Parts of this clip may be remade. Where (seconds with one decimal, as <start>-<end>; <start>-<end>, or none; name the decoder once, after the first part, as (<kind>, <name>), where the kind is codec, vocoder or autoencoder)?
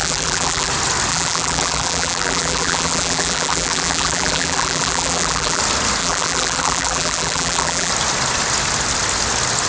0.0-0.7 (vocoder, BigVGAN v2); 1.1-5.6; 6.0-7.9